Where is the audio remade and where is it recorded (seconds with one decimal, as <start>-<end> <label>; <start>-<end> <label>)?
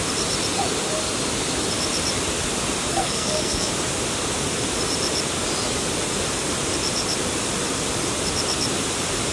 0.0-2.9 recorded; 2.9-3.7 remade; 3.7-9.3 recorded